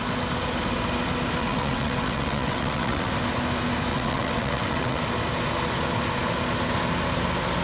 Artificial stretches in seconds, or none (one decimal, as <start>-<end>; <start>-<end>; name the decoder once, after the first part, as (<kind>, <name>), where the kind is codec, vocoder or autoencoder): 1.4-3.1 (vocoder, WaveNeXt); 3.9-5.0